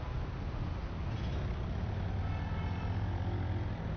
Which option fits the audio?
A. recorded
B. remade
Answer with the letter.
A